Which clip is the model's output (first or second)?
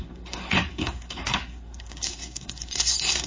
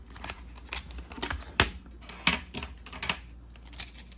first